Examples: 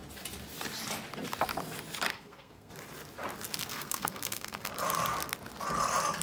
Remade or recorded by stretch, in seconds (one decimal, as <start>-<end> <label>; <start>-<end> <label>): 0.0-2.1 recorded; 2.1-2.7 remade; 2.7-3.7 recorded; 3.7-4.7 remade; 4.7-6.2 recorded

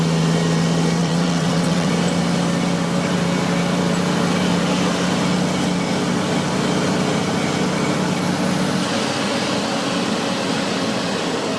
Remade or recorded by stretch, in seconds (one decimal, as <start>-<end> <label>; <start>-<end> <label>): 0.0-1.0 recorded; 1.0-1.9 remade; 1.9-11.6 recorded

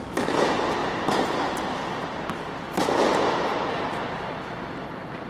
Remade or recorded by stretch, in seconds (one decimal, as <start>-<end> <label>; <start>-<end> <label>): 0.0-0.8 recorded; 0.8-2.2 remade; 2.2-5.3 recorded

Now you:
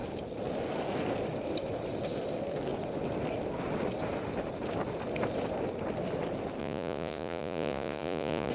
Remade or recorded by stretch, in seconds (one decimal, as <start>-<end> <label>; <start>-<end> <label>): 0.0-6.6 recorded; 6.6-8.5 remade

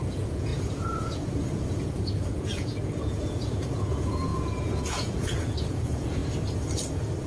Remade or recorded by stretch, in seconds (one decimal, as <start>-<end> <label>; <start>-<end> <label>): 0.0-6.2 remade; 6.2-7.3 recorded

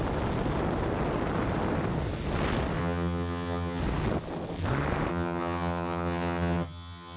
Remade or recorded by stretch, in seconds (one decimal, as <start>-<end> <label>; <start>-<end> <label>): 0.0-2.8 recorded; 2.8-3.8 remade; 3.8-5.1 recorded; 5.1-7.2 remade